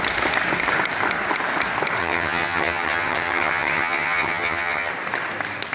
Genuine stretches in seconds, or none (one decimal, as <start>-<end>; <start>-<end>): 0.0-2.0; 4.9-5.7